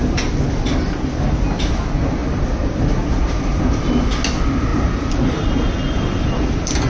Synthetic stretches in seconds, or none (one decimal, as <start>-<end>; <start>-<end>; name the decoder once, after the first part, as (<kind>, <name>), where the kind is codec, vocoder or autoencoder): 2.2-3.8 (vocoder, BigVGAN v2); 4.7-6.9